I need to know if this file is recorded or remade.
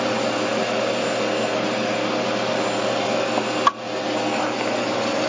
recorded